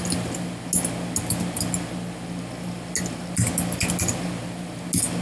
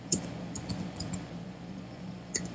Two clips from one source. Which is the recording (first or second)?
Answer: first